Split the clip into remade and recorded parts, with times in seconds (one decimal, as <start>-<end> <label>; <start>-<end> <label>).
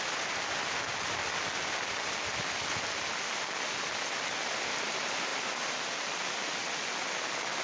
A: 0.0-7.6 recorded